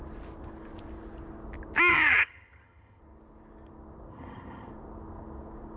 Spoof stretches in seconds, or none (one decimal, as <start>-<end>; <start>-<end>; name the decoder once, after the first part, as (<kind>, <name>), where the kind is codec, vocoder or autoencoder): 1.9-3.0 (vocoder, HiFi-GAN); 4.1-4.7